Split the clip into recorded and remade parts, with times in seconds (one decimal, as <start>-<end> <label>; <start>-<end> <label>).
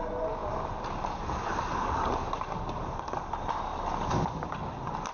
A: 0.0-5.1 recorded